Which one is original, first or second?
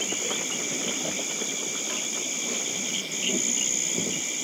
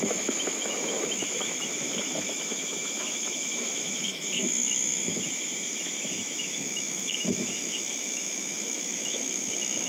first